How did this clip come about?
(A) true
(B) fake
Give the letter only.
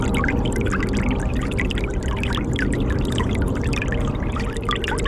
A